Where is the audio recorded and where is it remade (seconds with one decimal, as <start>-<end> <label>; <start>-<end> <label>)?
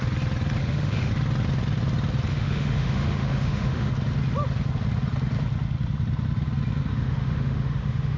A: 0.0-0.6 recorded; 0.6-1.1 remade; 1.1-2.3 recorded; 2.3-3.9 remade; 3.9-6.9 recorded; 6.9-8.2 remade